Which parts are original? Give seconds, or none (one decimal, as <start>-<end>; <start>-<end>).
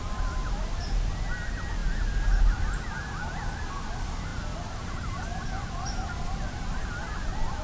0.0-7.6